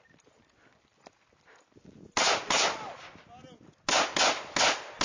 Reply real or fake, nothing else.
real